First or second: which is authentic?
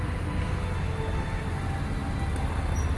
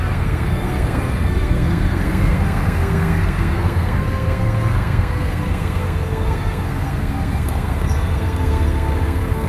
first